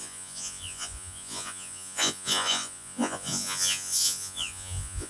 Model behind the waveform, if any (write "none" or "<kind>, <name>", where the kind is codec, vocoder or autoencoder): vocoder, Vocos